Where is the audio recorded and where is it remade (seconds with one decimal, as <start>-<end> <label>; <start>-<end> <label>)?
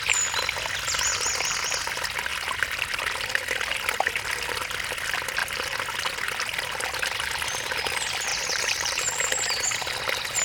0.0-8.3 recorded; 8.3-9.9 remade; 9.9-10.4 recorded